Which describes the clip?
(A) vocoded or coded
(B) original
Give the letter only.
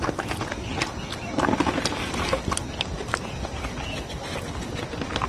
B